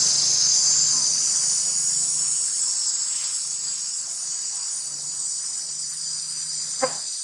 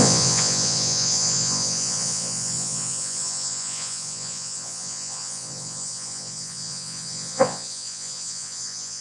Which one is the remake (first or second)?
second